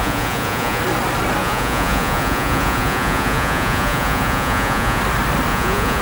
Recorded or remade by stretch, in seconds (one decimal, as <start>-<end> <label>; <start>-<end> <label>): 0.0-0.8 remade; 0.8-1.4 recorded; 1.4-5.0 remade; 5.0-5.5 recorded; 5.5-6.0 remade